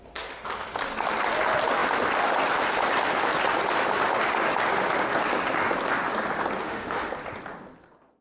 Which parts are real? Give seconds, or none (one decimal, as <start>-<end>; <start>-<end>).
0.0-6.6; 7.1-8.2